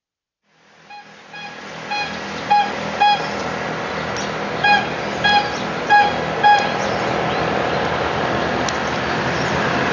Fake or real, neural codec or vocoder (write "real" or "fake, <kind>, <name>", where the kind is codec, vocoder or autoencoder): real